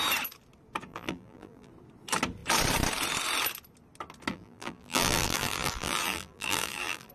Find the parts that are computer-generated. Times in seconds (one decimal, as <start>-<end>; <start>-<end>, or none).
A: 0.9-1.7; 4.3-7.1